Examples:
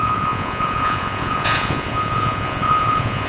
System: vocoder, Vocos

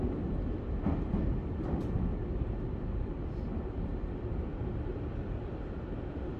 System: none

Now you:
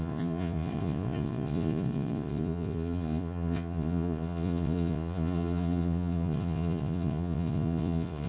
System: vocoder, Vocos